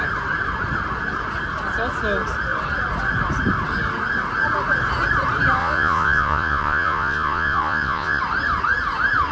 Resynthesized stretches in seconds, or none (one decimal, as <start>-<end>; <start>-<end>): 5.6-8.2